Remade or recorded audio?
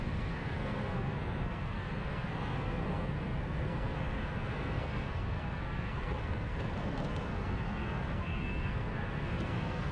remade